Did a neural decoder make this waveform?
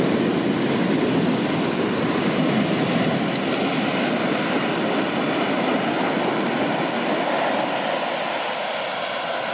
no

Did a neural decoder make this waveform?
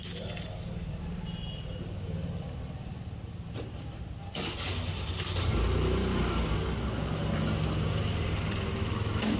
no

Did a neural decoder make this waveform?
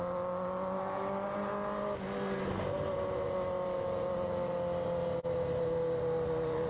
no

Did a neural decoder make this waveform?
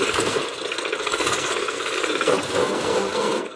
yes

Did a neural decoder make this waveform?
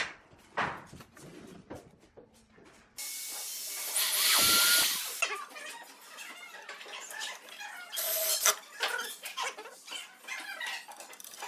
no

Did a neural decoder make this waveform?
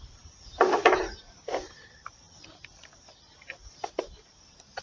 yes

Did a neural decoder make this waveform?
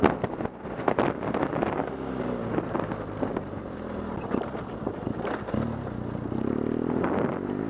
no